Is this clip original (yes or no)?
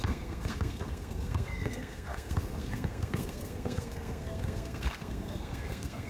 no